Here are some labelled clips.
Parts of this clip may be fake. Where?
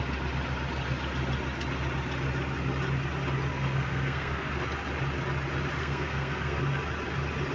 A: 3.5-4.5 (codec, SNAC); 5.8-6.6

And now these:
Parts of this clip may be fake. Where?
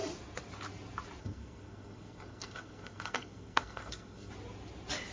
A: 1.2-4.3 (codec, SNAC)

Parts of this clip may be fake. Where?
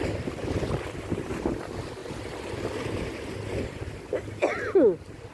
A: none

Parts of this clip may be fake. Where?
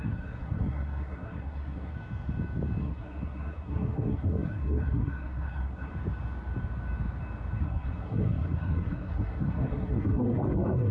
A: 0.0-1.9 (codec, SNAC); 2.8-5.9; 7.6-10.9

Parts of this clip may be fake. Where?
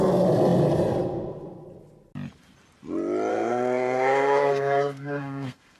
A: 3.3-5.8 (codec, SNAC)